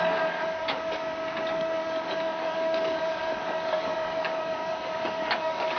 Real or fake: fake